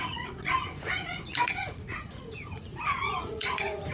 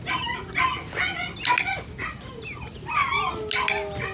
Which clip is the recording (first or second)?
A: second